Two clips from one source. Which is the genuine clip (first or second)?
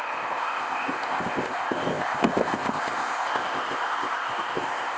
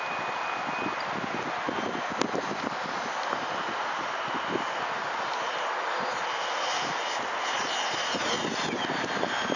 second